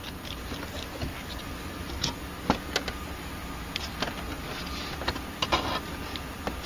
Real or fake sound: real